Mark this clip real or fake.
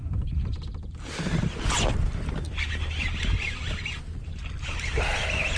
real